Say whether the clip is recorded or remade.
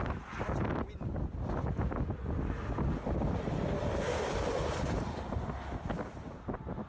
recorded